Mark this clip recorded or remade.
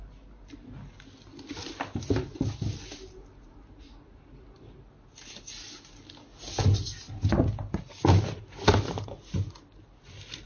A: recorded